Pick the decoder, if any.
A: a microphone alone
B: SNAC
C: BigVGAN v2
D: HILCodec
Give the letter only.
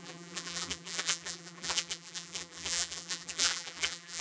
C